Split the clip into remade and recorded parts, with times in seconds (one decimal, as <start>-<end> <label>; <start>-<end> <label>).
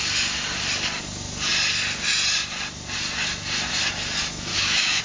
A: 0.0-4.5 recorded; 4.5-5.0 remade